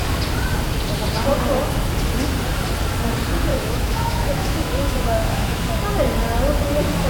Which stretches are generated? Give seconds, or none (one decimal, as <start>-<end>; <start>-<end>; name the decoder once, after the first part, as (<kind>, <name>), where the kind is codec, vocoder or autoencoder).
3.5-5.6 (autoencoder, DAC-VAE)